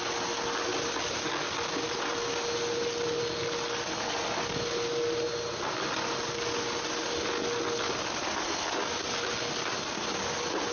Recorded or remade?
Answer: recorded